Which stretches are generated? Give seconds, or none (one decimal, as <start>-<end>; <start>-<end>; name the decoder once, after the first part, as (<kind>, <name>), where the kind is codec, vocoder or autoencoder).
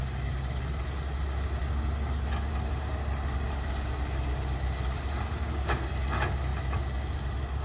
none